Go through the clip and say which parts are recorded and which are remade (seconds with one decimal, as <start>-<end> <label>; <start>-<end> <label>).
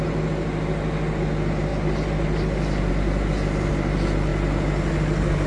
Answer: 0.0-5.5 recorded